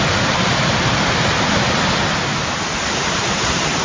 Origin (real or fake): real